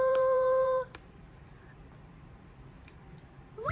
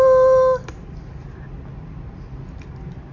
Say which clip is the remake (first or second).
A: first